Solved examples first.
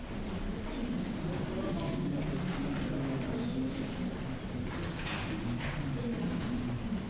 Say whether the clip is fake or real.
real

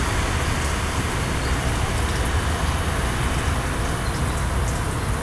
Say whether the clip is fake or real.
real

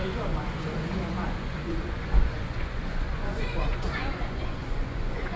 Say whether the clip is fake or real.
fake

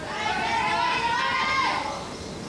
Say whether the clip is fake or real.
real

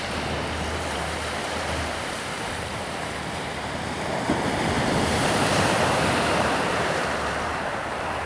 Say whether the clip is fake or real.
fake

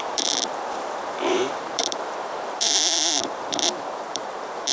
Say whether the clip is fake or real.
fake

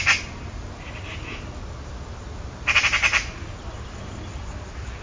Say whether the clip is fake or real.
real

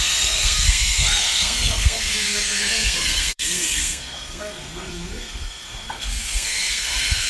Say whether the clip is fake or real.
fake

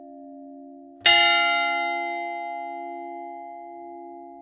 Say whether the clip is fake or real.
real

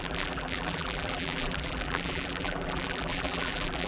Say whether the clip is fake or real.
fake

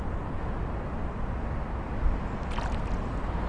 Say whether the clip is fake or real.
real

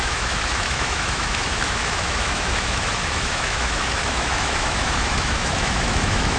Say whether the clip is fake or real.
fake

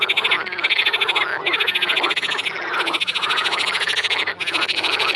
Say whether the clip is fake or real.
real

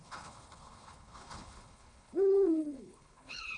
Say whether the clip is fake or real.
fake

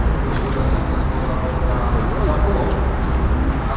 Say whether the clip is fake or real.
real